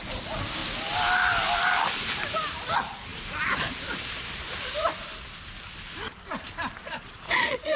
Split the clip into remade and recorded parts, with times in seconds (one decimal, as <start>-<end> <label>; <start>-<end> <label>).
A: 0.0-6.8 recorded; 6.8-7.8 remade